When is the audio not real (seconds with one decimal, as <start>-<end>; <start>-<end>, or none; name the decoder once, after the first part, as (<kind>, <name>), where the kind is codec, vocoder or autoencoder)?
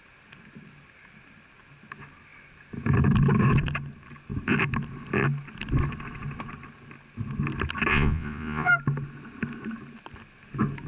7.9-8.7 (vocoder, Vocos)